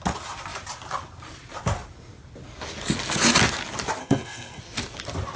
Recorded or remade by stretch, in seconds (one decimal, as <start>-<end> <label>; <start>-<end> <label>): 0.0-4.0 recorded; 4.0-4.6 remade; 4.6-5.4 recorded